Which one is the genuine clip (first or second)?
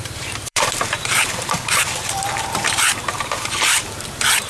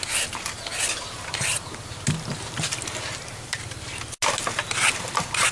second